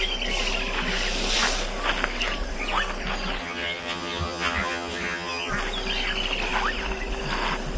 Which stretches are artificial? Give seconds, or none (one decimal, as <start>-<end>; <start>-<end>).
3.4-5.5

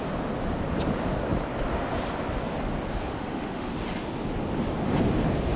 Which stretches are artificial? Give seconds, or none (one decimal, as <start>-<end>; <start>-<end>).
3.1-3.7

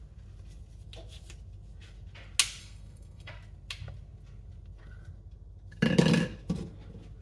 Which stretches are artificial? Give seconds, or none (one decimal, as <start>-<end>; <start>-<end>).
2.6-3.3

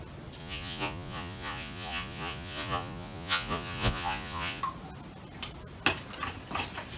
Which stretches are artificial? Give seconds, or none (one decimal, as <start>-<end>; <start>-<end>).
0.4-4.6

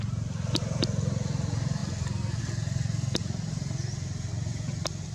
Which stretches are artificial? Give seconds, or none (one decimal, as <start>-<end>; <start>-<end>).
none

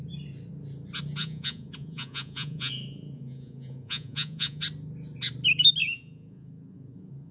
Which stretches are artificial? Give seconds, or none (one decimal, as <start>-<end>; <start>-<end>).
1.2-4.6; 5.8-7.3

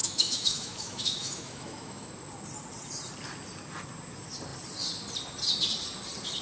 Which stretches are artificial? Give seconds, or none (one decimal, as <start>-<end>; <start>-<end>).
0.0-2.1